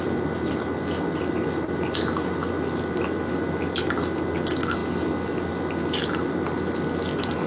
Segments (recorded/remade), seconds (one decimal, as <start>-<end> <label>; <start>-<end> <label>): 0.0-7.5 recorded